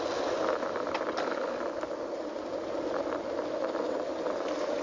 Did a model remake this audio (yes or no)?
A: no